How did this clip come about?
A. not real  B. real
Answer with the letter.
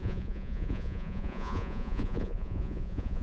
A